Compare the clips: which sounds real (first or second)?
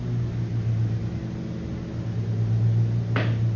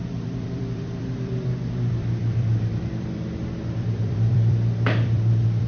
first